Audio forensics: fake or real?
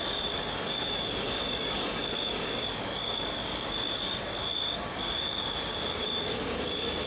fake